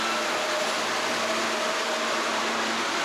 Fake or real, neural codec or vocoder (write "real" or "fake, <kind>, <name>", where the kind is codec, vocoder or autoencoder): real